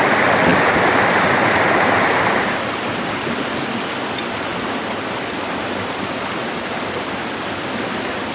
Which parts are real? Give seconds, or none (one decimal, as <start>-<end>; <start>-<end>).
0.0-0.5; 3.2-8.3